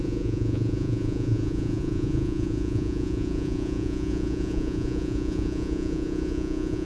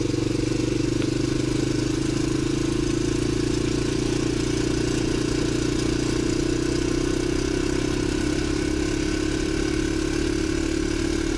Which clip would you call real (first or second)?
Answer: second